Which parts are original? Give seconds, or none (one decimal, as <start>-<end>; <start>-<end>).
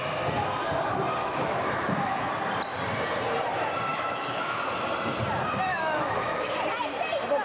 0.0-1.2; 2.3-3.9; 4.7-5.7; 6.6-7.4